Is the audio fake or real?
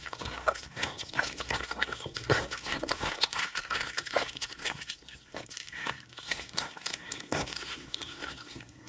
fake